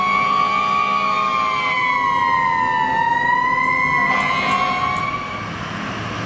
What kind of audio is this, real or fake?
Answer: real